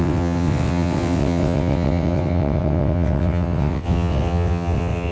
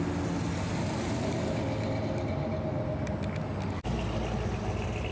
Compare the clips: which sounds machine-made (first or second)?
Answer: first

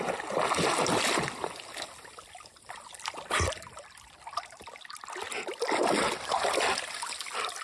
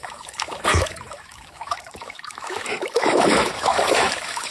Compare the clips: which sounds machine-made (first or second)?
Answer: second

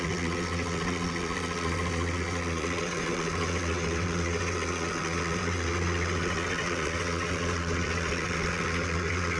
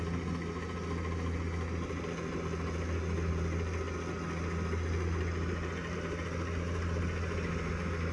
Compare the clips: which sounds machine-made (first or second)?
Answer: first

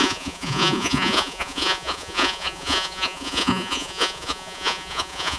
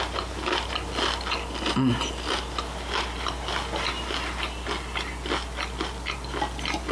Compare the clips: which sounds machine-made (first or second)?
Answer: first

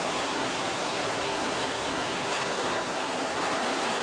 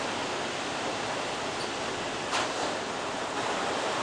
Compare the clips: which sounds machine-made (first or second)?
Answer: first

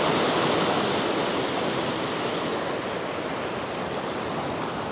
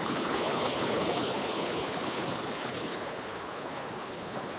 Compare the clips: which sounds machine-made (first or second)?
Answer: second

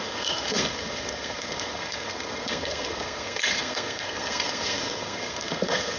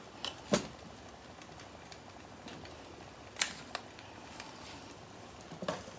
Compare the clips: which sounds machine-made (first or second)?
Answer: first